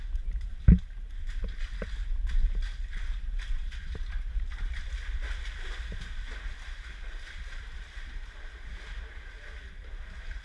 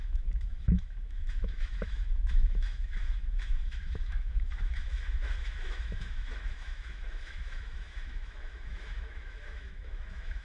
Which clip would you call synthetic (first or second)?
second